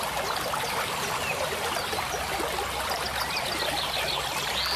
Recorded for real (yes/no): yes